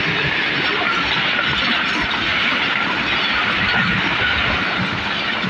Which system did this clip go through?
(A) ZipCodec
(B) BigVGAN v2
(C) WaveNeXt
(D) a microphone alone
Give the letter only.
D